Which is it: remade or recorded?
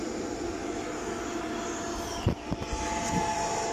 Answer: recorded